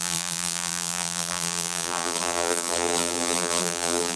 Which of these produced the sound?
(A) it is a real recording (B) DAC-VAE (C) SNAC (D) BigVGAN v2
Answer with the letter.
D